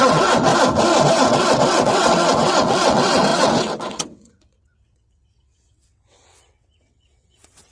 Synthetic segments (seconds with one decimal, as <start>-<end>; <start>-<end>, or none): 0.0-0.5; 1.1-7.7